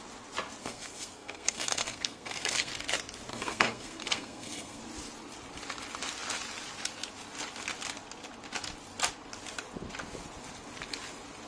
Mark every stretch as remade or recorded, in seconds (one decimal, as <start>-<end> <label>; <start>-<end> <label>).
0.0-0.6 recorded; 0.6-2.7 remade; 2.7-3.3 recorded; 3.3-4.8 remade; 4.8-11.5 recorded

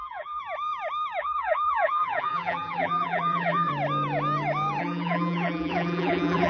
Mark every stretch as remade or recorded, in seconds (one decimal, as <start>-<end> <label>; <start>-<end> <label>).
0.0-0.4 remade; 0.4-1.2 recorded; 1.2-3.7 remade; 3.7-4.8 recorded; 4.8-6.5 remade

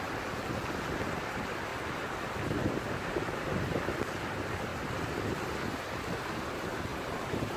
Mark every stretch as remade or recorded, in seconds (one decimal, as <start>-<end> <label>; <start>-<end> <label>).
0.0-6.9 recorded; 6.9-7.6 remade

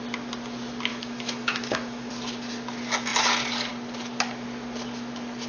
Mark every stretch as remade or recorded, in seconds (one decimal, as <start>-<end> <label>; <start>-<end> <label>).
0.0-0.9 recorded; 0.9-2.1 remade; 2.1-5.5 recorded